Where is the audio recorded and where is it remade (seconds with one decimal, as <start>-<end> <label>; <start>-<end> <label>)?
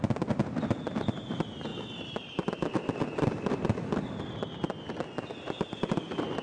0.0-1.7 recorded; 1.7-4.2 remade; 4.2-6.4 recorded